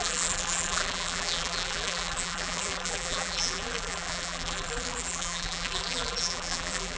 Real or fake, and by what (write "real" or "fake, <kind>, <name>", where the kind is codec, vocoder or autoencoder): fake, vocoder, BigVGAN v2